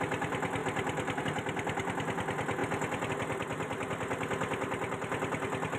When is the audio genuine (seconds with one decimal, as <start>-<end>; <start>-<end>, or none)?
0.0-5.8